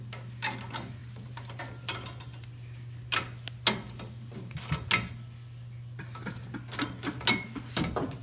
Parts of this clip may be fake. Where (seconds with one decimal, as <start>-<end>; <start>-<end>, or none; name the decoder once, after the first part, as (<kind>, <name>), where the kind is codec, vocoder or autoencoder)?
1.0-1.6 (vocoder, BigVGAN v2)